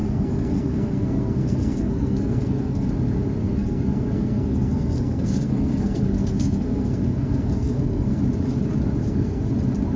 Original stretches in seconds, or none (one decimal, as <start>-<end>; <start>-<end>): 2.9-3.4; 8.2-9.0; 9.5-10.0